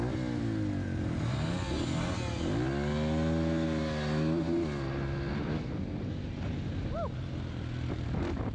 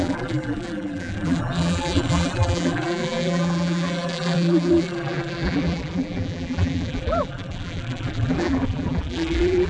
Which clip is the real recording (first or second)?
first